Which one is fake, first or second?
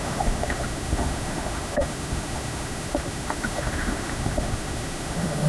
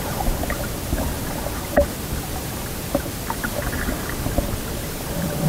first